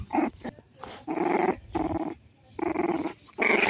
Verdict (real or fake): real